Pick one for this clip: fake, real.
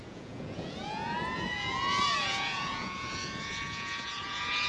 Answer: fake